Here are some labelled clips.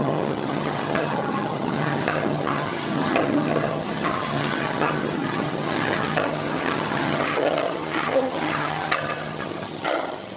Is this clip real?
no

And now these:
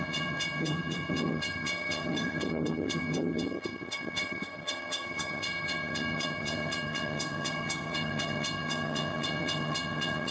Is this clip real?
no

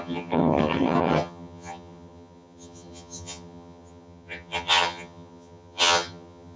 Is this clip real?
no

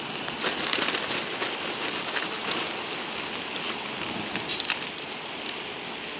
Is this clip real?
yes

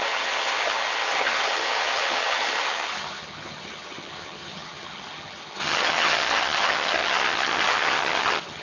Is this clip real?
no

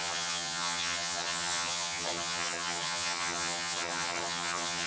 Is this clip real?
no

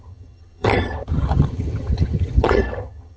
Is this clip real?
no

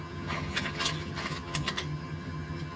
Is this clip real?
no